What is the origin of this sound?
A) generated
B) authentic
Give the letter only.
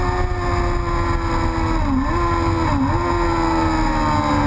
B